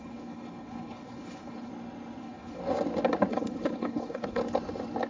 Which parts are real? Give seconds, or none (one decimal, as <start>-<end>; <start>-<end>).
1.7-2.2; 2.6-3.3; 4.4-5.1